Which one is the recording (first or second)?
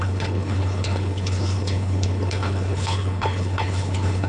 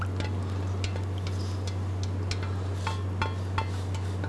second